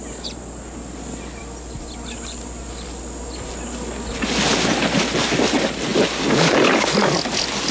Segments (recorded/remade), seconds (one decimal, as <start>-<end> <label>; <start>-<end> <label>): 0.0-7.7 recorded